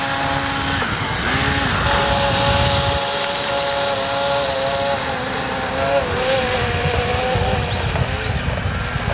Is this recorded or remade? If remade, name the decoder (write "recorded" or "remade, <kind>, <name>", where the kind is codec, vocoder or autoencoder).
recorded